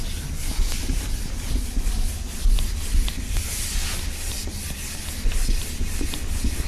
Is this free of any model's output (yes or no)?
yes